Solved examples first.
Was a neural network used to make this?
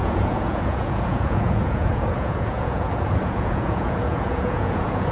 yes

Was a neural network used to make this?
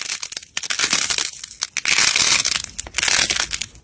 no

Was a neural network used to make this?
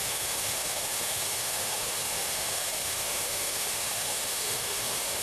yes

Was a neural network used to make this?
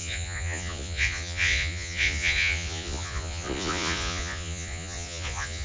yes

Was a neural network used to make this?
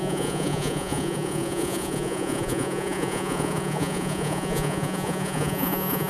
yes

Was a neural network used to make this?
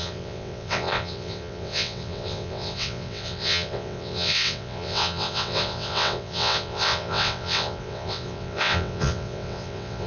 yes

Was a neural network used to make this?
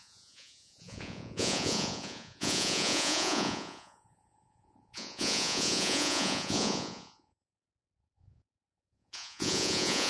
yes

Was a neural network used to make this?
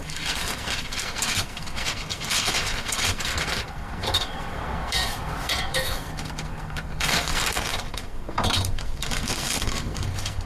yes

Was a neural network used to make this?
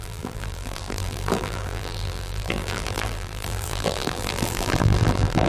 yes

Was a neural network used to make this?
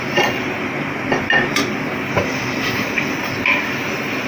no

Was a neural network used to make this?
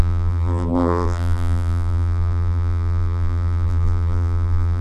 yes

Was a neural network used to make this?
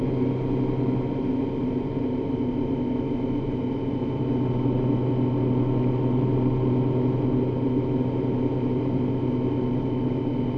no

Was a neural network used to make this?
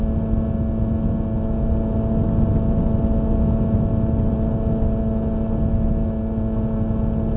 no